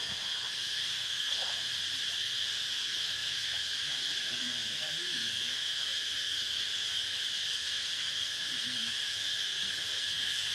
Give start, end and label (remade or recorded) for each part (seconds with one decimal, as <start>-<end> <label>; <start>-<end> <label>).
0.0-1.7 remade; 1.7-2.2 recorded; 2.2-10.5 remade

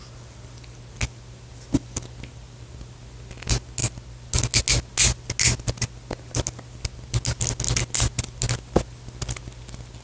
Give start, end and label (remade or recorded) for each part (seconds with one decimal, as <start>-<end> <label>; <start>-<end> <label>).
0.0-10.0 recorded

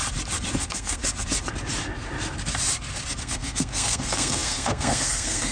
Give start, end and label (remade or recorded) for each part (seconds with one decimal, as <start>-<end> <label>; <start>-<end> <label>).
0.0-0.6 recorded; 0.6-1.0 remade; 1.0-3.2 recorded; 3.2-5.5 remade

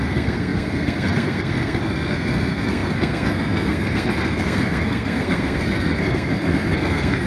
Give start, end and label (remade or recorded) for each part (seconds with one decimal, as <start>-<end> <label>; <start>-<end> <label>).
0.0-7.3 remade

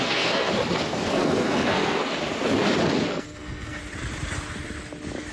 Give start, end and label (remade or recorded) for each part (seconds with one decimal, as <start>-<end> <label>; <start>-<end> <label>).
0.0-0.5 remade; 0.5-1.1 recorded; 1.1-2.1 remade; 2.1-3.1 recorded; 3.1-3.8 remade; 3.8-5.3 recorded

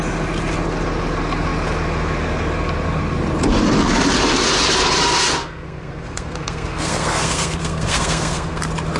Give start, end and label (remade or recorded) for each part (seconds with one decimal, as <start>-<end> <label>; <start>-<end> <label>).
0.0-5.4 recorded; 5.4-8.6 remade; 8.6-9.0 recorded

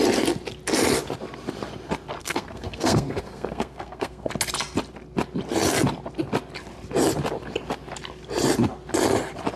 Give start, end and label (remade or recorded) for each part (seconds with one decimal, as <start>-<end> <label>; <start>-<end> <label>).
0.0-2.2 recorded; 2.2-4.3 remade; 4.3-9.6 recorded

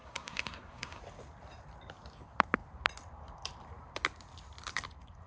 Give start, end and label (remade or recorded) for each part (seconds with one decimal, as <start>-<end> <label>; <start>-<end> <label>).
0.0-1.0 remade; 1.0-5.3 recorded